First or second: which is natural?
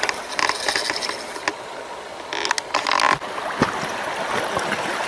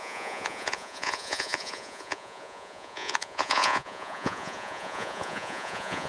first